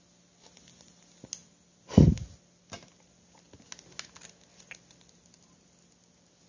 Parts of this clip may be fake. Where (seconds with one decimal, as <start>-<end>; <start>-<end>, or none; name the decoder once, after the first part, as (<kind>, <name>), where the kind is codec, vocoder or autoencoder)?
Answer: none